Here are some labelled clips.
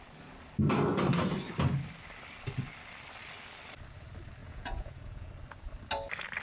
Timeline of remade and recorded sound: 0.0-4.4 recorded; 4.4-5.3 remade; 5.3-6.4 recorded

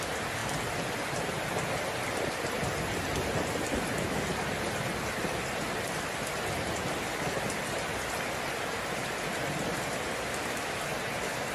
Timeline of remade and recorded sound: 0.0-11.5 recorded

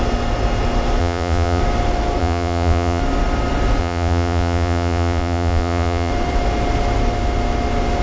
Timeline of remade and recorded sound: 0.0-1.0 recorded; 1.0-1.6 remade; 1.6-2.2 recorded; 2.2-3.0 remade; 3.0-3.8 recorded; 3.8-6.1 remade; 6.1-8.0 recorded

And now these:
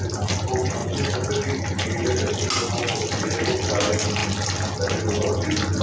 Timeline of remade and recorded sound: 0.0-0.8 recorded; 0.8-1.3 remade; 1.3-5.8 recorded